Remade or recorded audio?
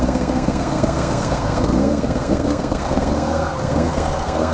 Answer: remade